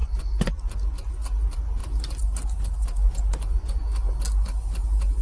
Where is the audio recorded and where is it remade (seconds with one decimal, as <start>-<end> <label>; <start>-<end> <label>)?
0.0-0.5 remade; 0.5-3.3 recorded; 3.3-4.1 remade; 4.1-5.2 recorded